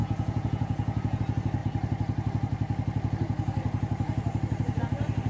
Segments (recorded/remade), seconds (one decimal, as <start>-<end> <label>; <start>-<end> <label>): 0.0-1.2 remade; 1.2-5.3 recorded